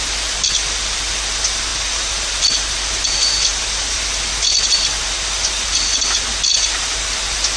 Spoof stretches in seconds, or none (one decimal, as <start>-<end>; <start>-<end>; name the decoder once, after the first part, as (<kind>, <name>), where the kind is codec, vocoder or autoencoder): 1.7-2.4 (vocoder, BigVGAN v2)